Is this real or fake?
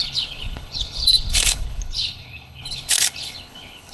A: fake